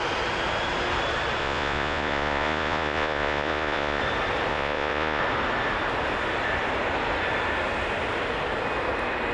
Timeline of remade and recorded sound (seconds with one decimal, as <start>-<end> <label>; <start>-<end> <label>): 0.0-1.4 recorded; 1.4-4.0 remade; 4.0-4.5 recorded; 4.5-5.2 remade; 5.2-9.3 recorded